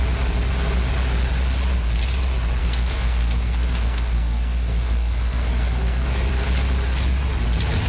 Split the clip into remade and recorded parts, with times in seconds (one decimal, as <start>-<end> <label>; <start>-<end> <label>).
0.0-2.6 recorded; 2.6-6.3 remade; 6.3-7.9 recorded